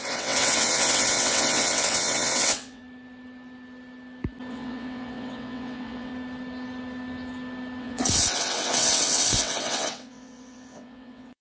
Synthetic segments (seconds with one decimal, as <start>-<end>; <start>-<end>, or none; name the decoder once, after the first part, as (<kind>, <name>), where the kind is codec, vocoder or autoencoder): 0.0-2.8 (vocoder, WaveNeXt); 4.5-6.1; 7.8-11.4